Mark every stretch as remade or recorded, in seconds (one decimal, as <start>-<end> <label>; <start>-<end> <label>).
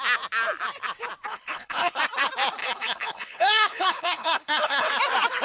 0.0-1.3 recorded; 1.3-2.0 remade; 2.0-2.6 recorded; 2.6-4.9 remade; 4.9-5.4 recorded